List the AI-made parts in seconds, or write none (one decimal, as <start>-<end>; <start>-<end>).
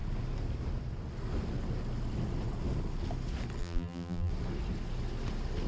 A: 3.6-4.3